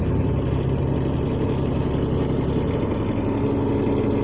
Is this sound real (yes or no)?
yes